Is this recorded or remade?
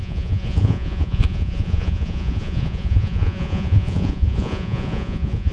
remade